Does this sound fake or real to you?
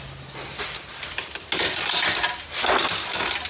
real